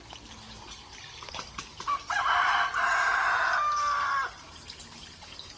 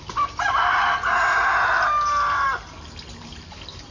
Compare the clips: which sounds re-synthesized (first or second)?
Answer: first